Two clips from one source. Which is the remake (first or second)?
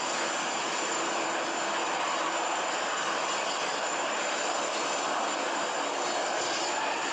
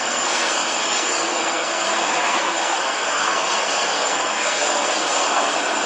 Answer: second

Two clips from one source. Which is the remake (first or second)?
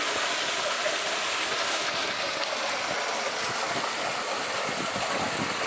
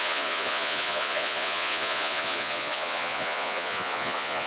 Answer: second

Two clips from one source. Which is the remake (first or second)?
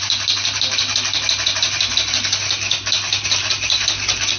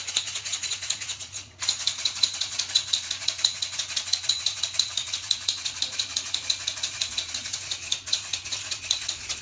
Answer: second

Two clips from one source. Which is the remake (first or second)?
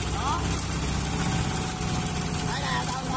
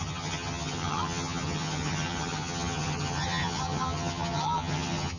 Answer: second